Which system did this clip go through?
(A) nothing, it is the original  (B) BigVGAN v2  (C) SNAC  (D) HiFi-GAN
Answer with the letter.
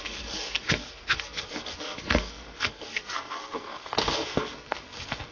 C